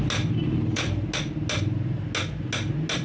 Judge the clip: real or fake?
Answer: real